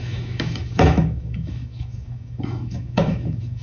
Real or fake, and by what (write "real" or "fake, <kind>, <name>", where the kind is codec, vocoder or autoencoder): fake, autoencoder, DAC-VAE